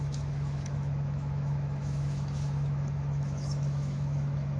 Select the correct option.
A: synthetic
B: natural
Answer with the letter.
A